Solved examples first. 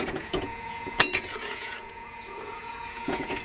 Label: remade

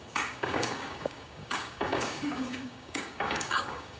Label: remade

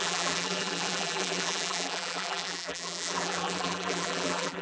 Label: remade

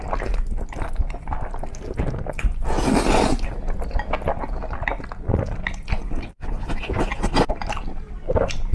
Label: recorded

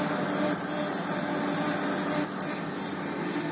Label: recorded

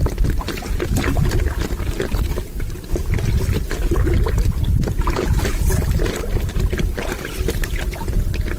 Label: recorded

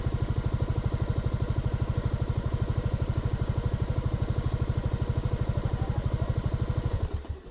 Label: recorded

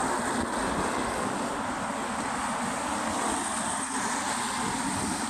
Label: recorded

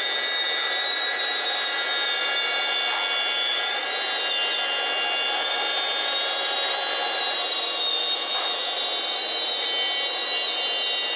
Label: recorded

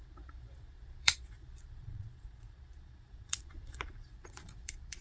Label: remade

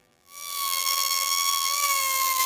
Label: remade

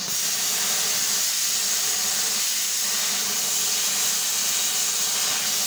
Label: recorded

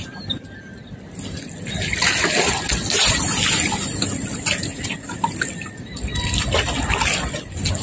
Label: recorded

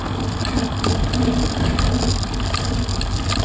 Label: recorded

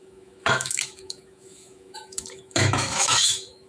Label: remade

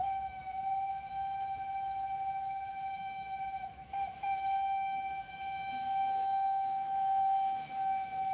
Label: remade